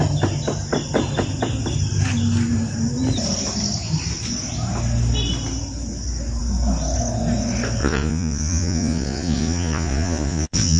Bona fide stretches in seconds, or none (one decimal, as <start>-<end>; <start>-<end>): 0.0-7.8